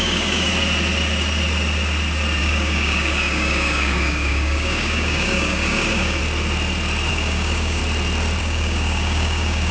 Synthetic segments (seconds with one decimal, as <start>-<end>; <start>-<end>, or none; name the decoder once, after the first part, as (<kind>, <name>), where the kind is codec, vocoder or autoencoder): 0.0-0.5 (codec, DAC); 2.4-6.2; 7.1-7.8; 8.4-9.7